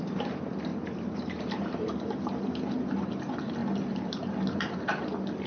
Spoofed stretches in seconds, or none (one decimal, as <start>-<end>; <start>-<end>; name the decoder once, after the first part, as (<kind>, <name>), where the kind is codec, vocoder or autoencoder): 0.7-1.4 (vocoder, BigVGAN v2); 3.6-4.8